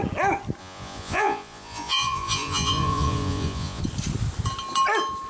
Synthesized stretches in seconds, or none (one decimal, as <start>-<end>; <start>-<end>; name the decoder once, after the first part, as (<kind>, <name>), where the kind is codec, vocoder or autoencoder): 0.6-3.8 (vocoder, Vocos)